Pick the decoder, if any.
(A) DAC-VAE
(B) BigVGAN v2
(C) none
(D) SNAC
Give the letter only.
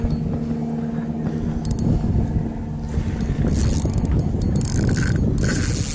C